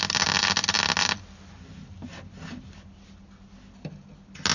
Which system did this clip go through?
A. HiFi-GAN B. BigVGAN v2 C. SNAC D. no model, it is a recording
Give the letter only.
D